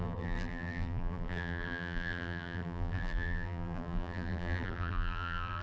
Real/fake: fake